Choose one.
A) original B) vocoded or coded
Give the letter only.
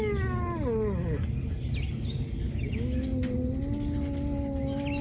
A